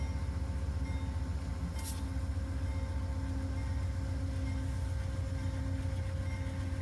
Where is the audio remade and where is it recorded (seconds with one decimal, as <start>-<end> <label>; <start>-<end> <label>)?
0.0-6.8 recorded